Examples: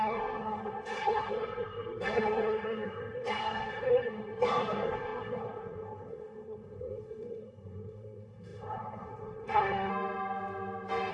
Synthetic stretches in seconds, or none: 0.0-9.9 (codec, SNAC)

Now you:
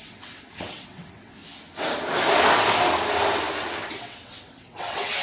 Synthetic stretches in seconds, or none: 0.0-1.4 (vocoder, WaveNeXt); 3.9-5.2

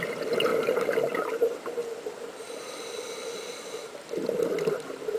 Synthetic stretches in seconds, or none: 0.0-1.8 (vocoder, BigVGAN v2)

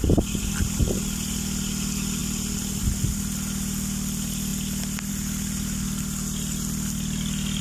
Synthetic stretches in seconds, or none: none

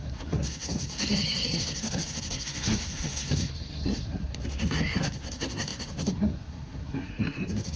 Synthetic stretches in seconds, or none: 0.0-7.8 (codec, SNAC)

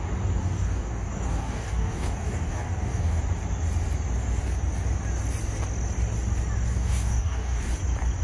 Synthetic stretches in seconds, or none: 0.4-3.2 (codec, DAC); 6.7-7.7